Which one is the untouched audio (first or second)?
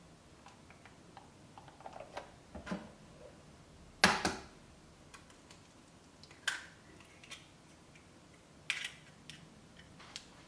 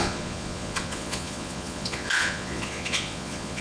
first